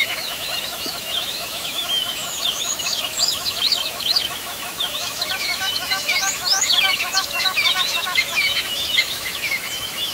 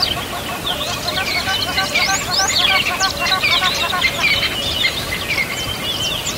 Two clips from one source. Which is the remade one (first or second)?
first